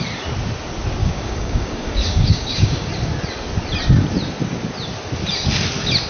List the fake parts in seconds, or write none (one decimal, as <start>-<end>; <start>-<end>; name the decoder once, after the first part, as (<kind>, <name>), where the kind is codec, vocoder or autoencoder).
1.0-2.9 (codec, DAC)